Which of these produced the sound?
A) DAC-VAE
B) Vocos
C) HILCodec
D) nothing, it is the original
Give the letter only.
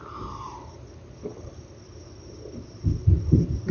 D